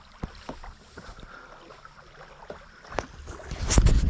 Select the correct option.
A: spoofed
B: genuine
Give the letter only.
B